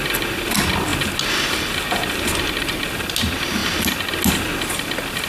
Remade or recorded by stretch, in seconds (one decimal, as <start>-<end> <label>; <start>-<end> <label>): 0.0-5.3 recorded